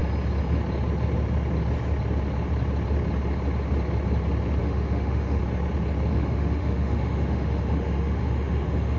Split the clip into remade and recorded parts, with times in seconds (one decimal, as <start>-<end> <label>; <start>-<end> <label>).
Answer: 0.0-4.6 recorded; 4.6-5.4 remade; 5.4-6.1 recorded; 6.1-9.0 remade